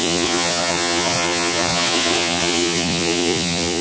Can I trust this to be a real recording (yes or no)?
no